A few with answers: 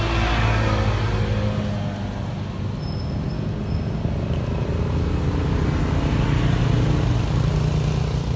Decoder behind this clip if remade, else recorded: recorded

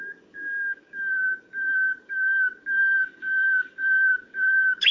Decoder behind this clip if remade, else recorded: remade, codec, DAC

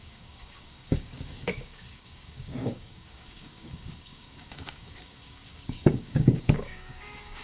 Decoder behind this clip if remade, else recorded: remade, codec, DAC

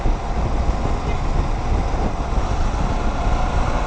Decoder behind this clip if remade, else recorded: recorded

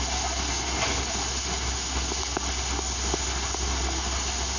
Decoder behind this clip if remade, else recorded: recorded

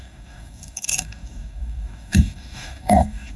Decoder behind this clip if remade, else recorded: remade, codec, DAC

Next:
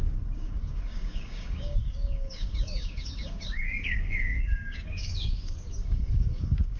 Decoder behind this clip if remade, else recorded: remade, codec, DAC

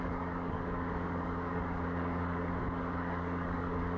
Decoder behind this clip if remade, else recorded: remade, codec, DAC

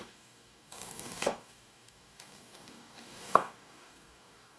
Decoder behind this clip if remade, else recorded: remade, codec, DAC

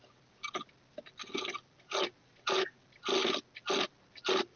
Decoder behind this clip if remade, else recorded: recorded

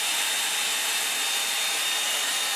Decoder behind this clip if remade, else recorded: recorded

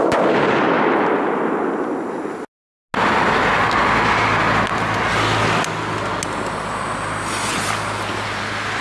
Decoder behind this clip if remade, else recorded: recorded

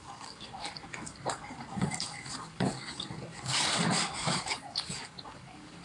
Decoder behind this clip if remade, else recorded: remade, codec, DAC